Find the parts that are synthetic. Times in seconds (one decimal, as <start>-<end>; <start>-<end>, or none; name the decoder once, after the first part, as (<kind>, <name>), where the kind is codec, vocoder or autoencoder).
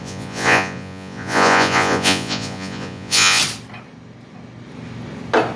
0.0-3.4 (vocoder, Vocos)